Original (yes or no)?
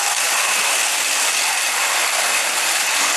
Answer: yes